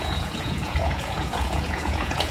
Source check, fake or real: fake